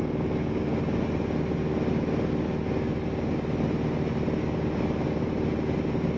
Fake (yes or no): no